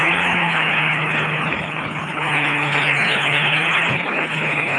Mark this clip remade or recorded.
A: remade